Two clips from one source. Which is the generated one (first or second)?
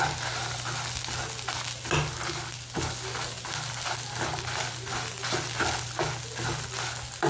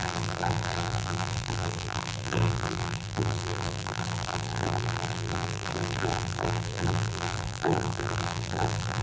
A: second